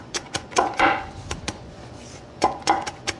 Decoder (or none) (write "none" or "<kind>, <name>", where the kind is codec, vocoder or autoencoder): vocoder, Vocos